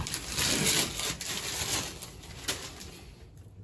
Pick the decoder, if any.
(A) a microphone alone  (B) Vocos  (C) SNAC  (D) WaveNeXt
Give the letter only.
A